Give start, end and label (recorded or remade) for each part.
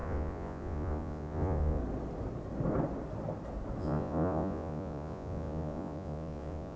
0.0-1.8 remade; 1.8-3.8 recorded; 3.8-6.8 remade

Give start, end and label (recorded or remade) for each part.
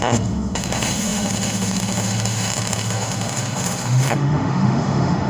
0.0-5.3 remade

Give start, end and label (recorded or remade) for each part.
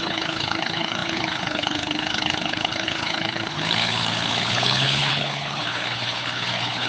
0.0-6.9 remade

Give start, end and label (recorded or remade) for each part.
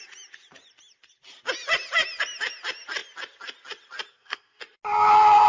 0.0-4.1 recorded; 4.1-4.6 remade; 4.6-5.5 recorded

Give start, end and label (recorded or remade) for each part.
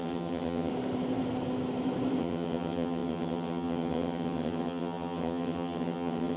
0.0-0.7 remade; 0.7-2.2 recorded; 2.2-6.4 remade